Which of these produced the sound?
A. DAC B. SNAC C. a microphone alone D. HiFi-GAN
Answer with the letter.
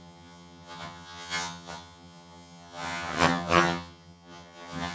D